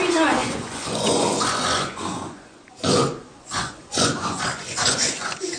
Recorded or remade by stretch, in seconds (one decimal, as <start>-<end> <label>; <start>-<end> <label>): 0.0-5.6 remade